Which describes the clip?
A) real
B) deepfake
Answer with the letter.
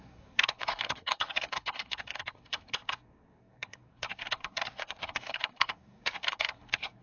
B